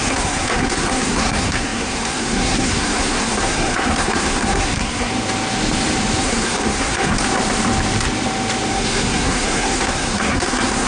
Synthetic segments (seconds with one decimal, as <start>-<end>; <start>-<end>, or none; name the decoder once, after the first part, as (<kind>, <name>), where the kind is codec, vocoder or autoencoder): 0.0-5.1 (codec, SNAC); 6.2-7.1; 8.7-10.9